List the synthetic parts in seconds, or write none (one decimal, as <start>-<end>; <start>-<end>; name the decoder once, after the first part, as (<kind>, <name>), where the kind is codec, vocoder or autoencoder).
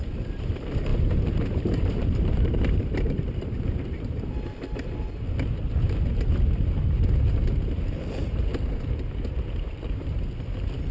0.9-4.3 (vocoder, BigVGAN v2)